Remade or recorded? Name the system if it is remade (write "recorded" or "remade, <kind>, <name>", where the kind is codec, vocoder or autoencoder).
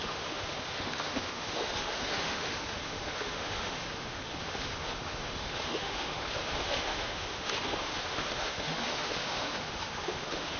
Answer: remade, autoencoder, DAC-VAE